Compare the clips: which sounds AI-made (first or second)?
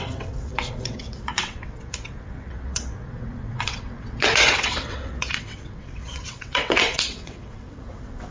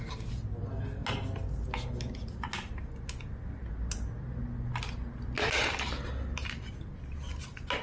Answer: first